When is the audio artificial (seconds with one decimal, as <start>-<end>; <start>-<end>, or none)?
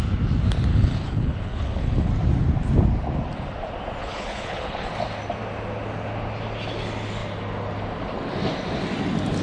0.7-2.1; 4.0-4.9